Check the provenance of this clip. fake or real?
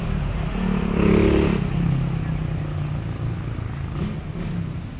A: real